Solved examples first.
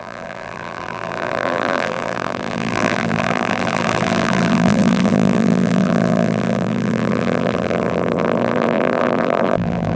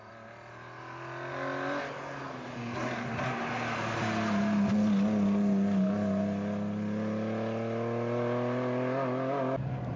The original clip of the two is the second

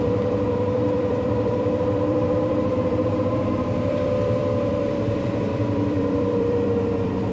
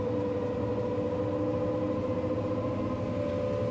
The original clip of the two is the second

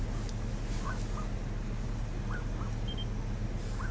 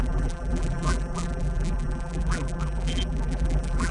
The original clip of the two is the first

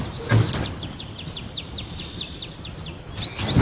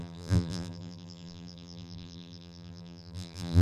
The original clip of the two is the first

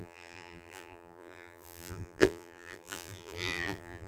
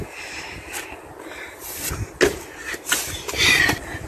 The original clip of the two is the second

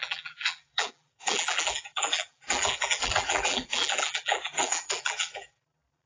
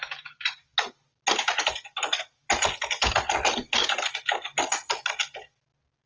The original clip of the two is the second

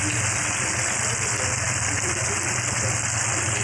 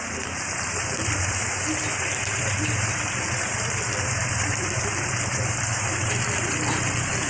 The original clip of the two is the first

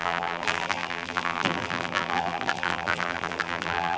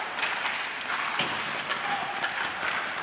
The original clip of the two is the second